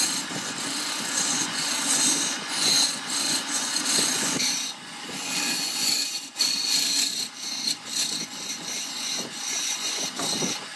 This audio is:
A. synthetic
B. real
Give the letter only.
A